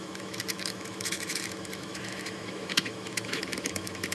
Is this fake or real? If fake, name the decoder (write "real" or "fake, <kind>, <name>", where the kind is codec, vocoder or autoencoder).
fake, autoencoder, DAC-VAE